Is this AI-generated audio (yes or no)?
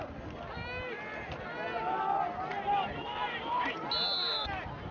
no